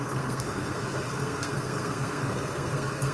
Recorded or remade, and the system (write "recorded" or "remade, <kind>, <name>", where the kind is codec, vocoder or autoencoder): remade, codec, SNAC